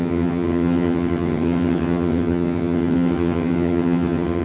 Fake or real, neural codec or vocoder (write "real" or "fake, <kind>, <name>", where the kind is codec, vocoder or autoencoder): fake, vocoder, HiFi-GAN